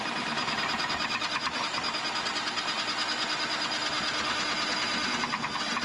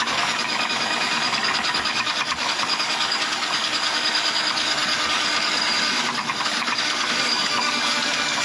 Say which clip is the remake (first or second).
second